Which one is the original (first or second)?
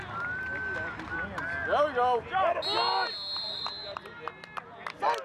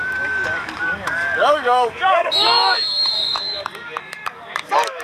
first